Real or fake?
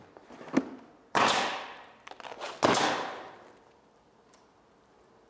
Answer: real